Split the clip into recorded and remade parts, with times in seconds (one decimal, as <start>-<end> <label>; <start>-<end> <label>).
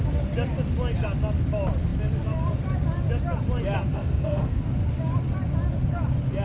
0.0-3.9 recorded; 3.9-4.6 remade; 4.6-6.4 recorded